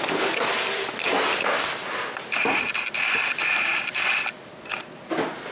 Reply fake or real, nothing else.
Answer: real